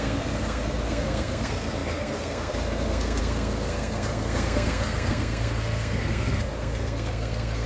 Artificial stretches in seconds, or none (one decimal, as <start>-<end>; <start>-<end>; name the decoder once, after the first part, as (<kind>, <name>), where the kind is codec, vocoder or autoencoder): 0.0-7.7 (codec, SNAC)